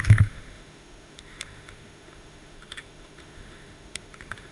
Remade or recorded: remade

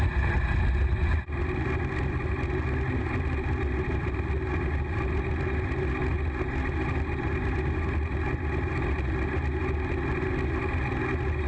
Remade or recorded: recorded